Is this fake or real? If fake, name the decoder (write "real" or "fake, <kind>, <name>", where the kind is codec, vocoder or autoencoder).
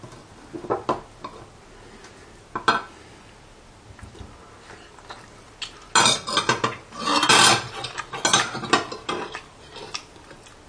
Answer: real